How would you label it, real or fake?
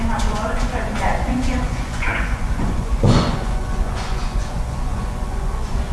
fake